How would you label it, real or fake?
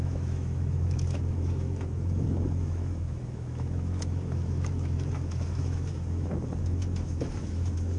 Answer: fake